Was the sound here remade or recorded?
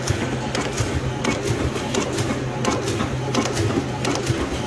recorded